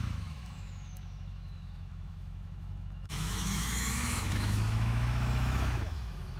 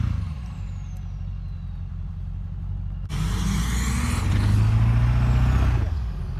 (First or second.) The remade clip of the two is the first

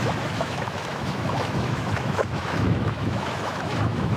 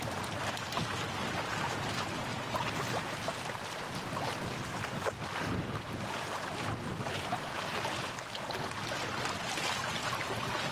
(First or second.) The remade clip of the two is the first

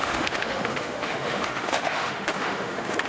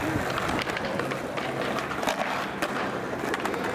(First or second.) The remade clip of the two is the first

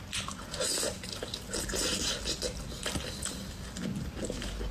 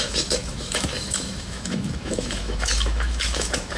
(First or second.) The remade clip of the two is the second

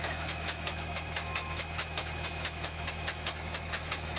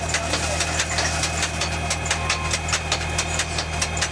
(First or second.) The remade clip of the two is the first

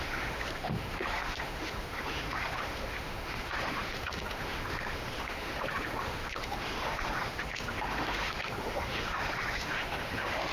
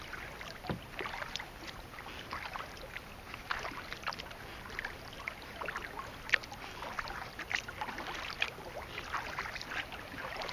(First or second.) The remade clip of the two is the first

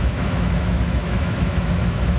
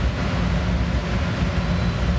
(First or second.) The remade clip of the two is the first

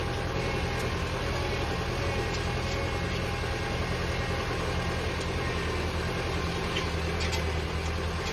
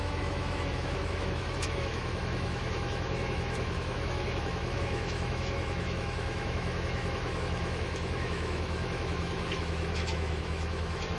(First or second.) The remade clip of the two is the second